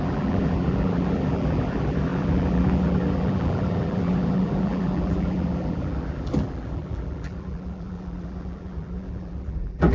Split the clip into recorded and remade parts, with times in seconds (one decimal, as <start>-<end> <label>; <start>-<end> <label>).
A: 0.0-9.9 remade